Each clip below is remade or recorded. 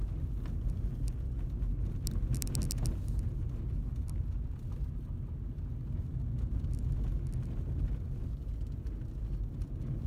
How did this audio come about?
recorded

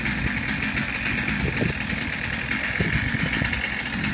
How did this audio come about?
recorded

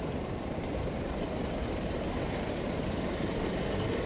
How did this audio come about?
remade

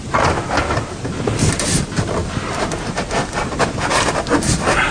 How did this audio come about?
recorded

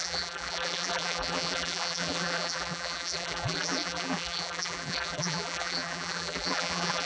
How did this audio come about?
remade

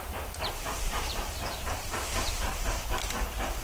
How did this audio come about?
remade